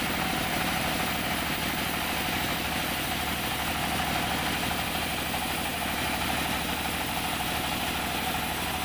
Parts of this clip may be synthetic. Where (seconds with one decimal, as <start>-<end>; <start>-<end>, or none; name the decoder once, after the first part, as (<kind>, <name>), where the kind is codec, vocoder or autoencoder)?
none